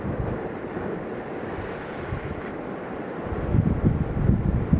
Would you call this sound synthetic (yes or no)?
no